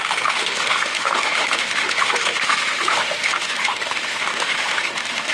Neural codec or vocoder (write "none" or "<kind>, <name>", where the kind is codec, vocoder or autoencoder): autoencoder, DAC-VAE